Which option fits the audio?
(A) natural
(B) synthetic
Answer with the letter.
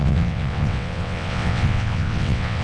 B